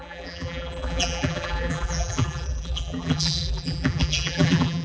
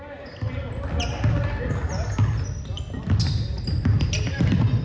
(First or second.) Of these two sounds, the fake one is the first